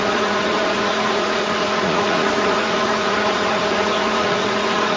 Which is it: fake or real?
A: fake